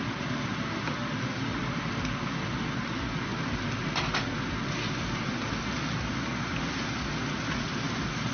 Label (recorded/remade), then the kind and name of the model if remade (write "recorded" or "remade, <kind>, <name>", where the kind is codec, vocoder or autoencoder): recorded